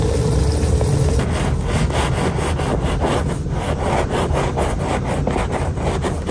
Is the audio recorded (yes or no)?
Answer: yes